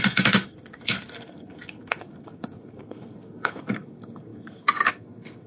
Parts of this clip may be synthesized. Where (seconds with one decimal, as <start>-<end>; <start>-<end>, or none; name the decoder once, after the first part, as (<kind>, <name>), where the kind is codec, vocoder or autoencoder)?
0.0-5.5 (codec, SNAC)